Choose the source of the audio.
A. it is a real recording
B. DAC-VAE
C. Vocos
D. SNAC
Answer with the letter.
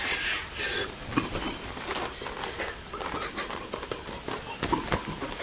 A